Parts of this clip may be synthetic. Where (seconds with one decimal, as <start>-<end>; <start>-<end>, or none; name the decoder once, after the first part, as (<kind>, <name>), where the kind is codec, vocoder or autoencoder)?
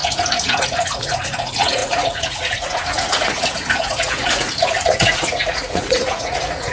0.0-6.7 (vocoder, Vocos)